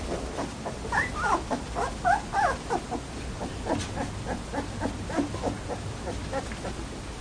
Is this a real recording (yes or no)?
yes